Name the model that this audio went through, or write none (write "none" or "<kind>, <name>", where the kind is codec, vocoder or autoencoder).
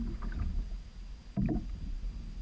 none